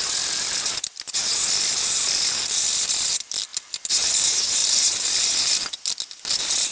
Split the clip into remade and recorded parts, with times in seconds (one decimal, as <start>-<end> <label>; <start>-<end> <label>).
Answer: 0.0-4.6 recorded; 4.6-5.6 remade; 5.6-6.7 recorded